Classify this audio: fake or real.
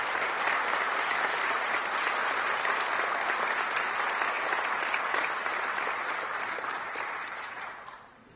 fake